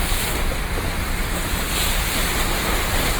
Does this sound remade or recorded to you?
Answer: remade